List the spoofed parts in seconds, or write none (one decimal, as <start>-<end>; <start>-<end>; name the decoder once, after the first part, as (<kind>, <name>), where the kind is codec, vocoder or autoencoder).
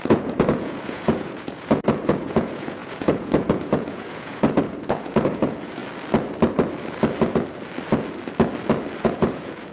0.0-5.8 (vocoder, Vocos); 9.0-9.7